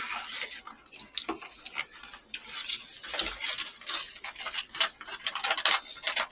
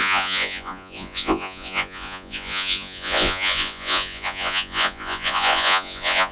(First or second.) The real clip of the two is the first